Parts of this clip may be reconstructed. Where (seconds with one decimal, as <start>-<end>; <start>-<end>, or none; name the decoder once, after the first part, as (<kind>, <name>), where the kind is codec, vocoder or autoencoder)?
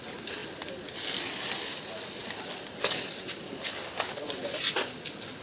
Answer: none